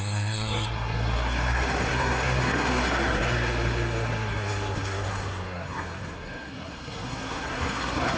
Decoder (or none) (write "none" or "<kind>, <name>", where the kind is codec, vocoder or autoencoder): codec, SNAC